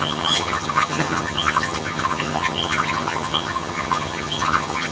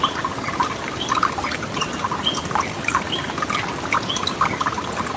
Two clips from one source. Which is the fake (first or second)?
first